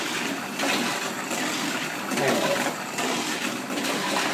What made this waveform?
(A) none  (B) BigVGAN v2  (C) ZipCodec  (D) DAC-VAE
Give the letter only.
A